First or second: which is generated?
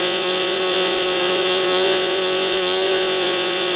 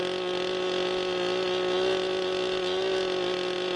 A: first